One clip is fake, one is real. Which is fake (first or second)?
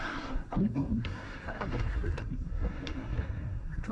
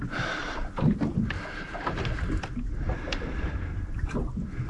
first